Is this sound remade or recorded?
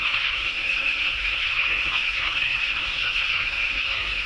remade